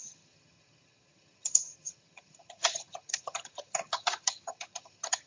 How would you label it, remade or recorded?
remade